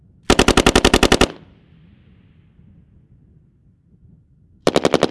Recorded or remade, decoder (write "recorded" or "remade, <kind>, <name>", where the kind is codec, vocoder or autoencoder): recorded